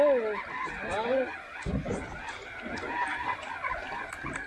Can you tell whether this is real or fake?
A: real